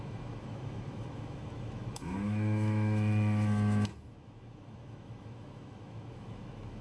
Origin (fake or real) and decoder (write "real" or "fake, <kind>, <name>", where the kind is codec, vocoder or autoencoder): fake, autoencoder, DAC-VAE